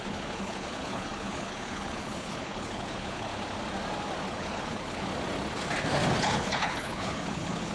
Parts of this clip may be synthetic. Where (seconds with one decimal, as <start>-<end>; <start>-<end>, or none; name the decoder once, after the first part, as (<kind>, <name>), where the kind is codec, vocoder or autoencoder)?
0.0-3.3 (codec, HILCodec); 4.3-5.1; 6.2-7.7